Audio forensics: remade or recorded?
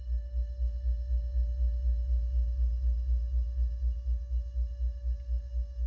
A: recorded